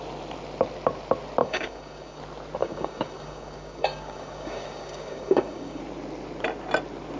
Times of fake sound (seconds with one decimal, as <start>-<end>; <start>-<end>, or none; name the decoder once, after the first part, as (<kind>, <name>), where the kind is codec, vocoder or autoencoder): 1.4-2.2 (codec, DAC); 2.6-5.8